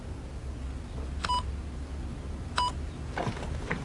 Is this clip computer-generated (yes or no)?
no